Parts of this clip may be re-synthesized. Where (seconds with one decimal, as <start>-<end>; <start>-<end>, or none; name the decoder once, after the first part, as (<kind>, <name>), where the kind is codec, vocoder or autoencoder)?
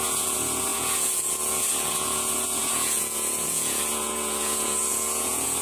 0.0-5.6 (vocoder, Vocos)